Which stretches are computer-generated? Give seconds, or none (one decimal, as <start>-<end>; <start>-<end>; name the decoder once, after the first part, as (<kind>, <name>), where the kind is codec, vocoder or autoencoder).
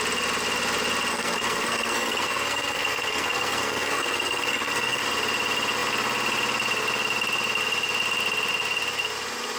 1.1-5.0 (codec, SNAC)